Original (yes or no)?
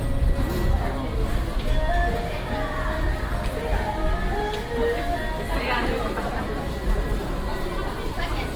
yes